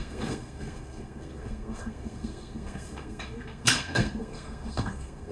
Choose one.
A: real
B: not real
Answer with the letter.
B